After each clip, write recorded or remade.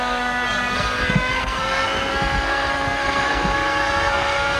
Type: remade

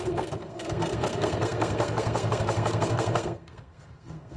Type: remade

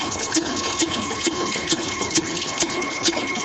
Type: remade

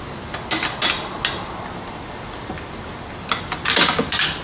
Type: recorded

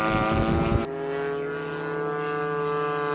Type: recorded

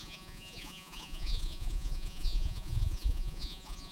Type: remade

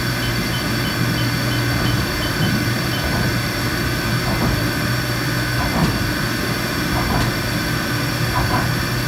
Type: remade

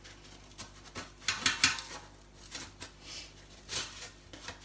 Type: recorded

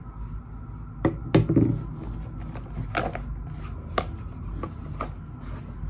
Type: recorded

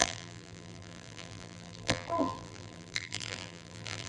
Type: remade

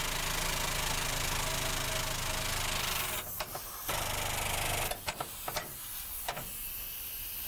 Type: recorded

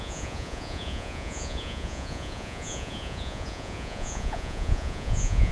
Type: remade